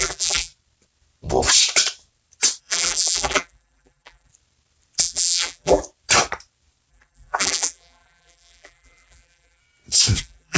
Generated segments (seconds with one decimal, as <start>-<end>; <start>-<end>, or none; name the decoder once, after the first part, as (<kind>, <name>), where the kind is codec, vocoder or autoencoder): 0.0-0.5 (vocoder, BigVGAN v2); 2.6-4.3; 5.0-5.8; 6.9-9.6; 10.2-10.6